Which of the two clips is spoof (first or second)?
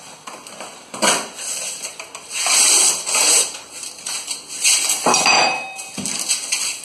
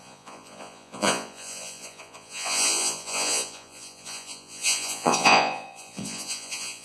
second